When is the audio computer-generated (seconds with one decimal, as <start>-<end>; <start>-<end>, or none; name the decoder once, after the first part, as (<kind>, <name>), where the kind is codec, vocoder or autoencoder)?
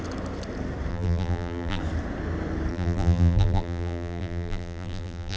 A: 0.9-1.8 (vocoder, BigVGAN v2); 2.7-5.4